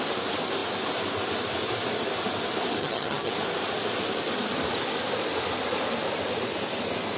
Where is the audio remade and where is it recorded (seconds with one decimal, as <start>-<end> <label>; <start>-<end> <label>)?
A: 0.0-2.8 recorded; 2.8-3.3 remade; 3.3-7.2 recorded